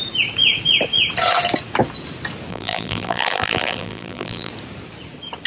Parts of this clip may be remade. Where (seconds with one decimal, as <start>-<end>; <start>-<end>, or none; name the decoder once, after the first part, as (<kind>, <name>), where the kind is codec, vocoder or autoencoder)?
2.5-4.5 (vocoder, BigVGAN v2)